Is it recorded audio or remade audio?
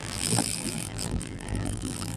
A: remade